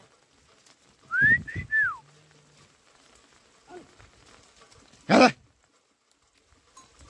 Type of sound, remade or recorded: recorded